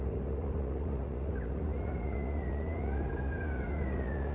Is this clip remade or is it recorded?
remade